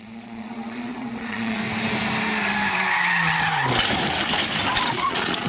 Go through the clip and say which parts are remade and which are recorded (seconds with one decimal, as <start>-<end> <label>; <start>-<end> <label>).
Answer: 0.0-1.6 remade; 1.6-4.9 recorded; 4.9-5.5 remade